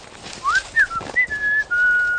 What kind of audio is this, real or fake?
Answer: real